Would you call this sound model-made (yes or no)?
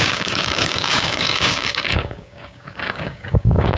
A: yes